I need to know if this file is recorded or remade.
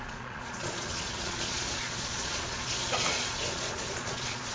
remade